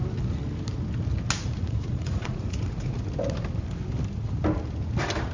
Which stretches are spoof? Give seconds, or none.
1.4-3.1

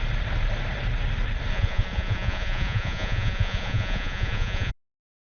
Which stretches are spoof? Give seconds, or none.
1.5-4.7

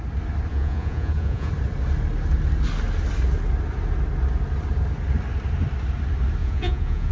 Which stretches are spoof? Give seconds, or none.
0.5-1.5; 6.4-7.1

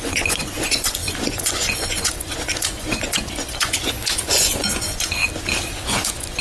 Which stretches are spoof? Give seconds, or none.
0.0-5.2; 5.7-6.4

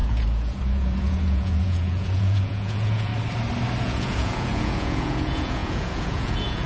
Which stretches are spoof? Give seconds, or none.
0.0-3.1; 3.8-6.7

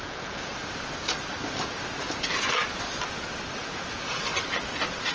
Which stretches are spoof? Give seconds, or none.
0.0-0.5; 3.6-4.3

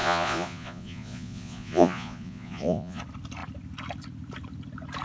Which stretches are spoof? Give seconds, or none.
0.0-3.0